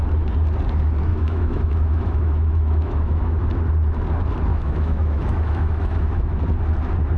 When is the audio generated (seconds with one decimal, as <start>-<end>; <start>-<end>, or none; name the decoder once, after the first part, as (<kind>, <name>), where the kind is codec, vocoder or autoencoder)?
1.1-3.4 (autoencoder, DAC-VAE); 4.5-6.4